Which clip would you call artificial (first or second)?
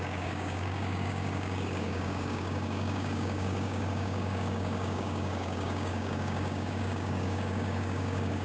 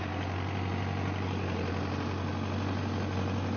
first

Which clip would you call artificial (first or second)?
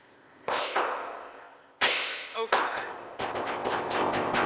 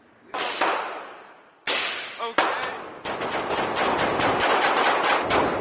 first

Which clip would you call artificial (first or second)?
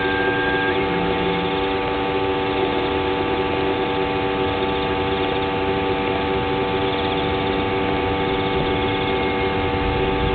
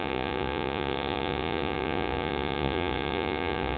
second